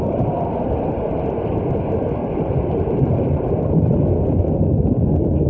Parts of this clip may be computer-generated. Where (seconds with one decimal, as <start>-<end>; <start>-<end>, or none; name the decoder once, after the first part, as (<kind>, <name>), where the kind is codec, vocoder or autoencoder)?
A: 2.2-3.6 (vocoder, BigVGAN v2)